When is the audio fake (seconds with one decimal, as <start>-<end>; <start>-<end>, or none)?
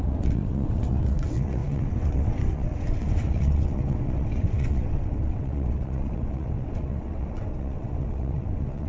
0.0-8.9